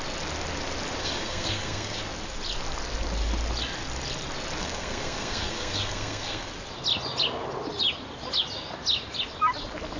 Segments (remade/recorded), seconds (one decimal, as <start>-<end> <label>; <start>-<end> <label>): 0.0-1.0 recorded; 1.0-2.0 remade; 2.0-4.6 recorded; 4.6-6.5 remade; 6.5-10.0 recorded